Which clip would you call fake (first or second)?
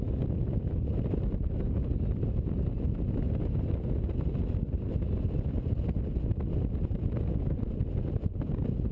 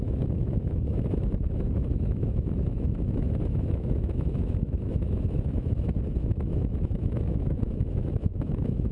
second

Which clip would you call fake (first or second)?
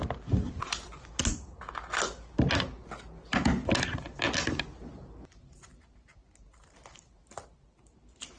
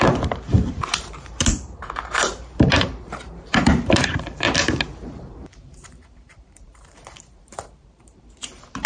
second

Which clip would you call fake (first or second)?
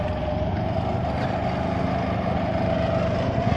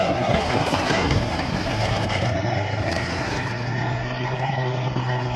second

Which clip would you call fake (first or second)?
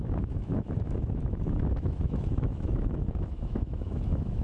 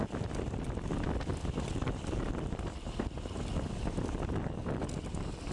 first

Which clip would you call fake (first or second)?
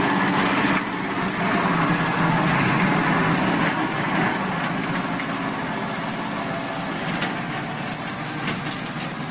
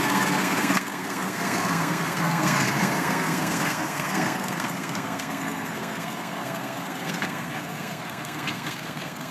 second